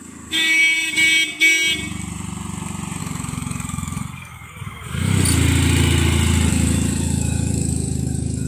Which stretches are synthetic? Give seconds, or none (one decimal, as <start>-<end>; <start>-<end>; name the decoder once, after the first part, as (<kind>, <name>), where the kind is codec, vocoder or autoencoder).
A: 0.0-0.6 (codec, DAC); 3.0-5.1; 6.5-8.5